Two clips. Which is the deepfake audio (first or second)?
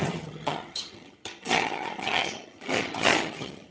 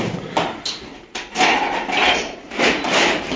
first